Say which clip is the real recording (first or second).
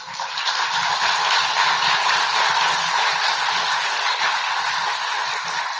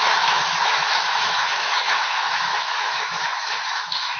first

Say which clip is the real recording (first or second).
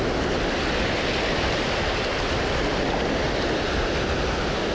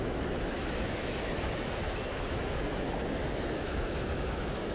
first